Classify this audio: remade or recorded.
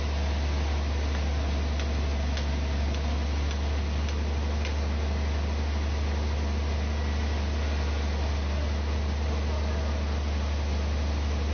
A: recorded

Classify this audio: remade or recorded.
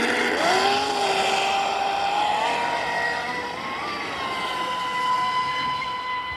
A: recorded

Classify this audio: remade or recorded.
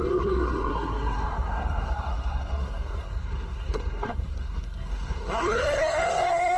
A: remade